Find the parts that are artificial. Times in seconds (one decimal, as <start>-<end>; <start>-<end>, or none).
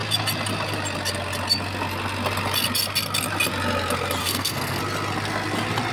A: 4.2-4.8